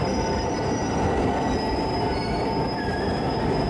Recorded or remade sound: recorded